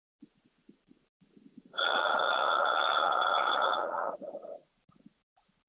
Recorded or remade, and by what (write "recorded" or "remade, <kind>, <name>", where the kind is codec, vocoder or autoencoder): remade, vocoder, Vocos